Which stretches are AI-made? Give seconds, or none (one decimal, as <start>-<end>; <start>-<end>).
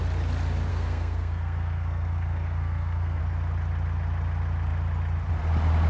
0.7-3.2